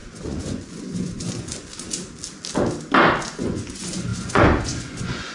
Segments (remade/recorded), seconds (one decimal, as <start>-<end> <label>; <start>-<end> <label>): 0.0-1.7 remade; 1.7-3.2 recorded; 3.2-5.3 remade